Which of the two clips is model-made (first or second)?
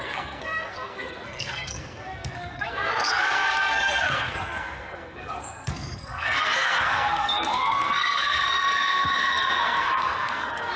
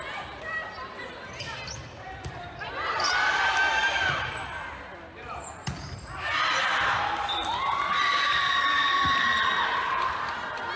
first